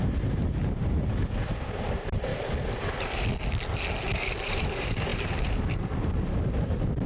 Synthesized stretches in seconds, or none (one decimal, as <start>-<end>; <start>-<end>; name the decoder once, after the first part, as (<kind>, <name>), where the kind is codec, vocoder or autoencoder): 0.0-2.3 (vocoder, BigVGAN v2); 4.4-7.1